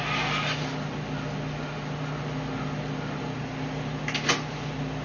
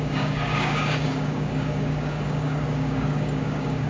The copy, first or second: second